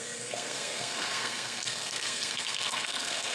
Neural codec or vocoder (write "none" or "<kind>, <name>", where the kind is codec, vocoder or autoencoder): codec, SNAC